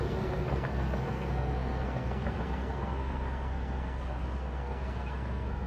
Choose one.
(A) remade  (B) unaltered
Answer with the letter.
A